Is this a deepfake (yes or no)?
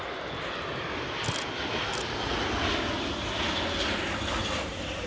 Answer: no